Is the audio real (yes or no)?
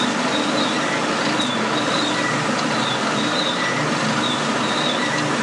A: yes